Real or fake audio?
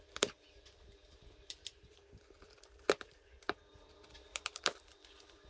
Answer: fake